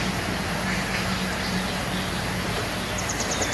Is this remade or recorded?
remade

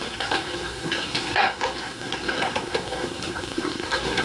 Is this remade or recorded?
remade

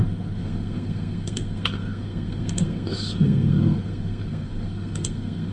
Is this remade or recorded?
remade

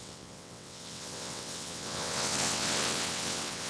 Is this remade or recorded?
remade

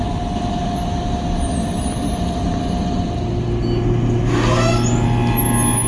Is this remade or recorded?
recorded